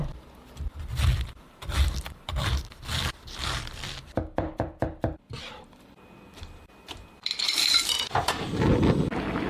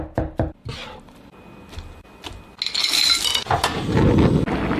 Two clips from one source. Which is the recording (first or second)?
second